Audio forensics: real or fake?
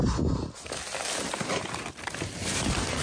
real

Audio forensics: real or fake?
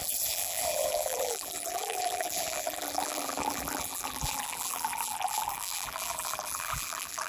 fake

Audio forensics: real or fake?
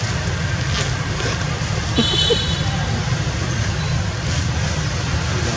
real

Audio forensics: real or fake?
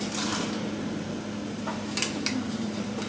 real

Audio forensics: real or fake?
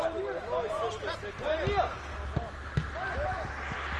real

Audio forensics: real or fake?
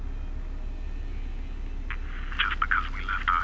real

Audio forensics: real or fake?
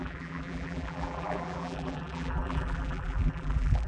fake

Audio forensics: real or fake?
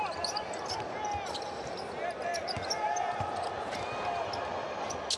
real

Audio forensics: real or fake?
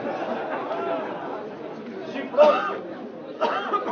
real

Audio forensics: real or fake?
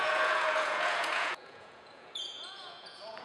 fake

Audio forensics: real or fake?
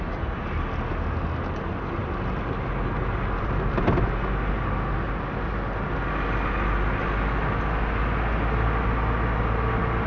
real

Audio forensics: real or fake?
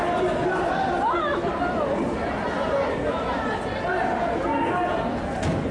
real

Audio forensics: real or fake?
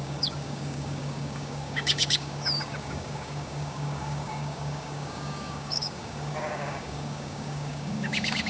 fake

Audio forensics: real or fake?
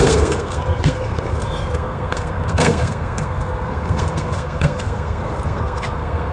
fake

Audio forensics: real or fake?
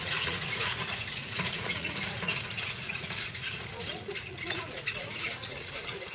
fake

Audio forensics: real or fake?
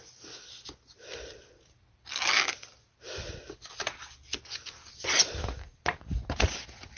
real